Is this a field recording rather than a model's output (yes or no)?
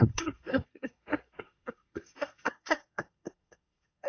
no